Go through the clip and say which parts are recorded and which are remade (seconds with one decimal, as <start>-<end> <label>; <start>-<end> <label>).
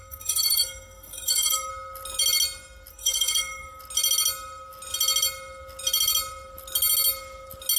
0.0-1.7 remade; 1.7-2.9 recorded; 2.9-3.8 remade; 3.8-7.8 recorded